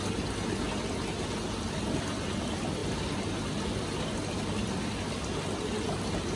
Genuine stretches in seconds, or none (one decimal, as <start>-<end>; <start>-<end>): 0.0-2.8; 5.3-6.4